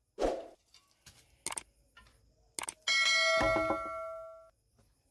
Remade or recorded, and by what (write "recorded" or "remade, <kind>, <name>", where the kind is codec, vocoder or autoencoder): recorded